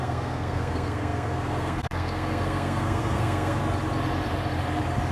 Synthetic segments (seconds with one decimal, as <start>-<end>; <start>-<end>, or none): 0.0-3.6